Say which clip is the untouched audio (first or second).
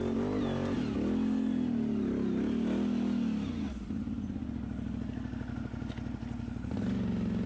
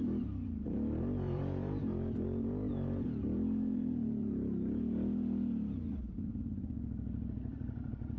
first